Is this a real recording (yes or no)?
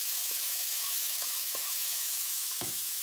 no